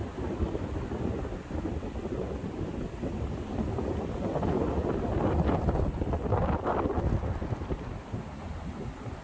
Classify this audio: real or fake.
real